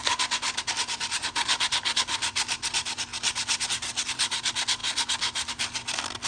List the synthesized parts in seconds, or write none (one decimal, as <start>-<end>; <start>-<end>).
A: 1.1-3.1; 3.7-4.8